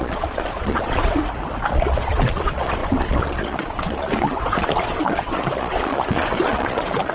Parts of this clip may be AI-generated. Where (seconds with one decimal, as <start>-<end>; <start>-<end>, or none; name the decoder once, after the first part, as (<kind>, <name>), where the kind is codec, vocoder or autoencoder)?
0.0-1.2 (vocoder, Vocos); 1.7-7.1